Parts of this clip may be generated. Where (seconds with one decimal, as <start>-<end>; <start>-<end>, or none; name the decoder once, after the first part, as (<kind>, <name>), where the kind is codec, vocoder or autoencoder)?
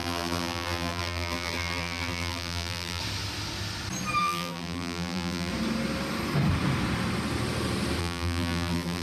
0.0-3.0 (vocoder, BigVGAN v2); 4.2-5.5; 8.0-9.0